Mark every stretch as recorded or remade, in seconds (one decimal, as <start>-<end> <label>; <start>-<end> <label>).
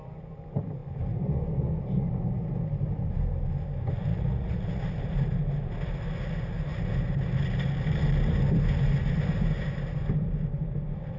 0.0-4.1 recorded; 4.1-4.8 remade; 4.8-11.2 recorded